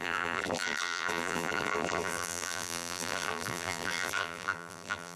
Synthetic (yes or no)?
yes